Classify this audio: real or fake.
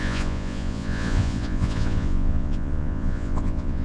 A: fake